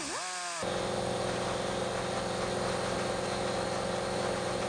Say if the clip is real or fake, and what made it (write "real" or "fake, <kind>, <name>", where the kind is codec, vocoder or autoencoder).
real